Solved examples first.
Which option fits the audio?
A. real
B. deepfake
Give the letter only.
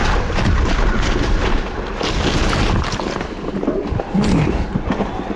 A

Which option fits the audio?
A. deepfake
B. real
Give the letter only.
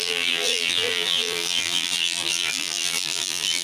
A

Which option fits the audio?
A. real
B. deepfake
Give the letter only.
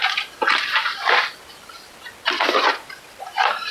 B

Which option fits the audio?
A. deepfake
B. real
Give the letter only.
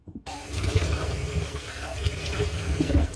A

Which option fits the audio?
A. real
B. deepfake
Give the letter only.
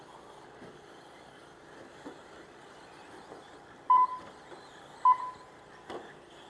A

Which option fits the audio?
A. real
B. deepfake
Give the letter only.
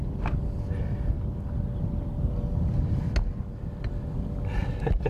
A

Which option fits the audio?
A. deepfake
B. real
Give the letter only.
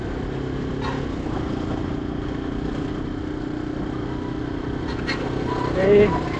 B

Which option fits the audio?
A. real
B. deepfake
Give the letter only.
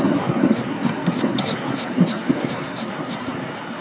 B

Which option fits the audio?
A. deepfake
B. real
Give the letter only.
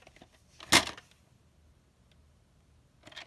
B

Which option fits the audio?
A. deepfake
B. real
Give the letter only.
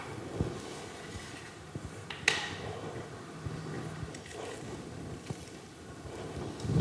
B